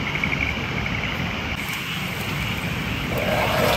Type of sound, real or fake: real